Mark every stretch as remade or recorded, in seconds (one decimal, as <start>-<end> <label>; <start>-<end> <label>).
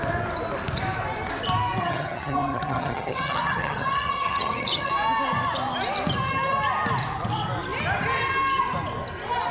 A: 0.0-1.8 recorded; 1.8-4.9 remade; 4.9-9.5 recorded